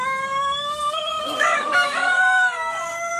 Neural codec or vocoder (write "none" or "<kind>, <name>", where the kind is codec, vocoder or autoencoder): codec, DAC